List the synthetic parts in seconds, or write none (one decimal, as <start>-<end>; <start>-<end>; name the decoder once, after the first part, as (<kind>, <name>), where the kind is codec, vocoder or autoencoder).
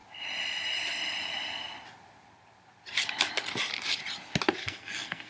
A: 4.6-5.3 (codec, SNAC)